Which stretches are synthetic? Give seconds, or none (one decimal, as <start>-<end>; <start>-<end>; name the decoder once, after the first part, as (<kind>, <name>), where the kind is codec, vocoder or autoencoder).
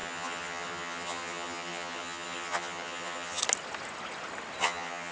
0.0-3.4 (vocoder, HiFi-GAN); 4.6-5.1